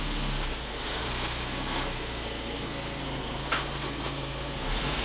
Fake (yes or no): yes